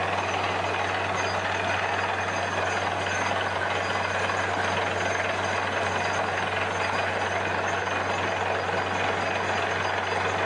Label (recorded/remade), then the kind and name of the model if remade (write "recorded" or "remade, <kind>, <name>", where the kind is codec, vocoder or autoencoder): recorded